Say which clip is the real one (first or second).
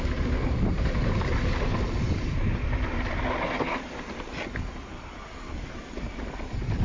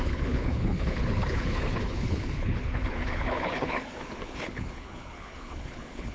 first